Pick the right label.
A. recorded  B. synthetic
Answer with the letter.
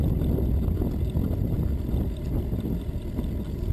B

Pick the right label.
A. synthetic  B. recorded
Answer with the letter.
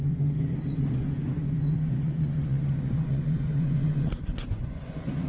A